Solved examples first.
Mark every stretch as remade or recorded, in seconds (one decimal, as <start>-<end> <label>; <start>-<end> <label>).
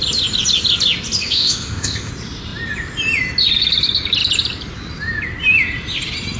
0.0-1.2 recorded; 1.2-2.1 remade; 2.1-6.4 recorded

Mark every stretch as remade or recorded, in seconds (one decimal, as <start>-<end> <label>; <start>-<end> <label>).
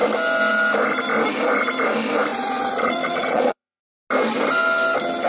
0.0-2.3 recorded; 2.3-3.8 remade; 3.8-5.3 recorded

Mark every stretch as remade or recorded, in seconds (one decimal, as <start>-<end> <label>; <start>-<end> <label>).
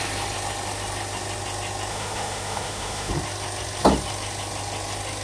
0.0-1.9 recorded; 1.9-3.1 remade; 3.1-5.2 recorded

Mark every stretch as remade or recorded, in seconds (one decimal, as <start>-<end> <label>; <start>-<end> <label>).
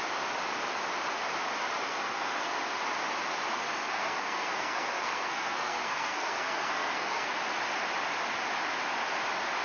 0.0-1.9 recorded; 1.9-2.6 remade; 2.6-3.5 recorded; 3.5-7.3 remade; 7.3-9.6 recorded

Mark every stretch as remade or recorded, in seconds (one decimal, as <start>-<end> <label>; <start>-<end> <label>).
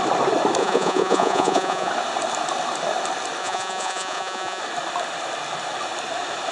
0.0-0.6 recorded; 0.6-1.9 remade; 1.9-3.4 recorded; 3.4-4.6 remade; 4.6-6.5 recorded